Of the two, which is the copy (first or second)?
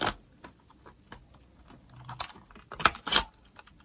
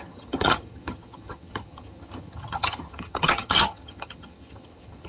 second